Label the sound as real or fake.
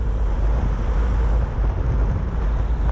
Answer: real